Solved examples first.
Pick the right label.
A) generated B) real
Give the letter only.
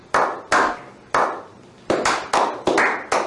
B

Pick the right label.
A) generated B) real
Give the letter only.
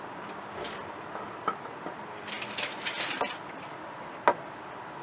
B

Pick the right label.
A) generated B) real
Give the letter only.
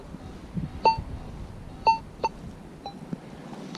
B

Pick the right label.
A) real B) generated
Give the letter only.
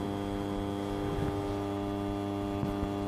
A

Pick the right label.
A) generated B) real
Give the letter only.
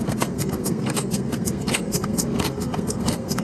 A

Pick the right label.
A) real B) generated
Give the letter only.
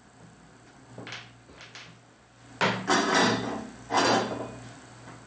A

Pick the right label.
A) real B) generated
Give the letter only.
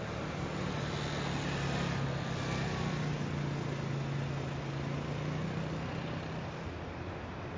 A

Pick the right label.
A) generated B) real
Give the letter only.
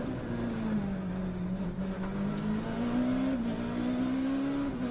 B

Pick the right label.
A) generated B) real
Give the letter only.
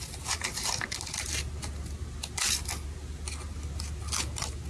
B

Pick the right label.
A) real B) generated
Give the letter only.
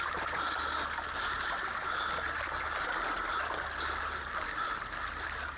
A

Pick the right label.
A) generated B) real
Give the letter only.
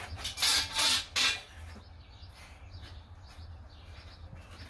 B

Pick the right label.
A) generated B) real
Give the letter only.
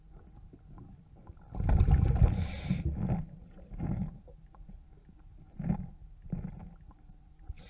B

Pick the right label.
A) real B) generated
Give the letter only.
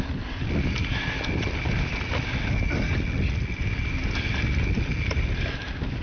A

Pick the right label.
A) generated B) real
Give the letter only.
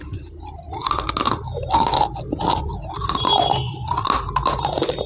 B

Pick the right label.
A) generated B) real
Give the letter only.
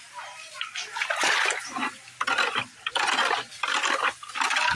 B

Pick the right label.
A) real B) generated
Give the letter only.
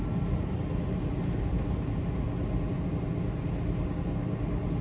A